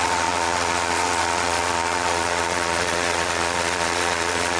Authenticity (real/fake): fake